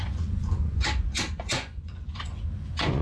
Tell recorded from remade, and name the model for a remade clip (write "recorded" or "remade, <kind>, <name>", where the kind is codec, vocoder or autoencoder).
remade, vocoder, Vocos